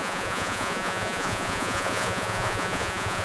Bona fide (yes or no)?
no